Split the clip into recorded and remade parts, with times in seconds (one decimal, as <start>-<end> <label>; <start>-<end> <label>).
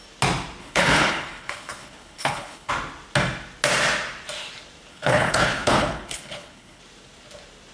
0.0-0.6 recorded; 0.6-2.7 remade; 2.7-4.9 recorded; 4.9-6.8 remade; 6.8-7.7 recorded